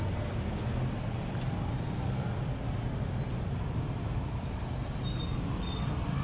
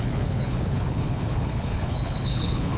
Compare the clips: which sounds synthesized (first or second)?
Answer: second